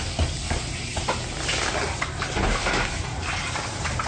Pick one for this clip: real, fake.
real